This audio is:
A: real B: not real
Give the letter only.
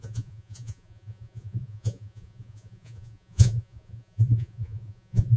B